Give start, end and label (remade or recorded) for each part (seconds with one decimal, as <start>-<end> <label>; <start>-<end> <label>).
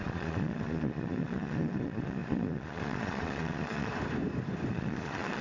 0.0-3.9 remade; 3.9-4.7 recorded; 4.7-5.4 remade